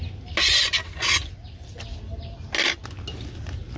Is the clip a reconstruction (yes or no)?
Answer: no